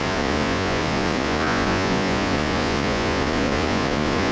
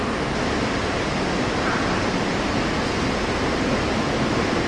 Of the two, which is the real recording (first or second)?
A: second